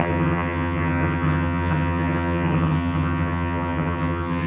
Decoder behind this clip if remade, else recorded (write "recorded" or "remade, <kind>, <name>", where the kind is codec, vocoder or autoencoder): remade, vocoder, HiFi-GAN